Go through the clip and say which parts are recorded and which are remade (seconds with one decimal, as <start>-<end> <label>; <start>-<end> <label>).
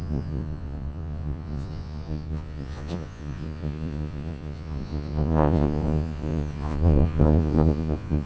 0.0-8.3 remade